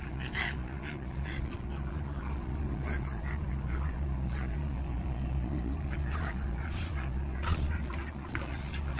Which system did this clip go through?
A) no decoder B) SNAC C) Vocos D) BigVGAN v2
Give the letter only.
C